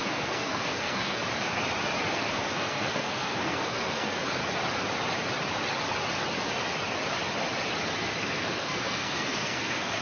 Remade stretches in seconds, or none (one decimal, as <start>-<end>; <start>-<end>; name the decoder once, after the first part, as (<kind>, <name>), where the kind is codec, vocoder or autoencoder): 0.0-1.2 (codec, SNAC); 2.1-4.4; 8.2-10.0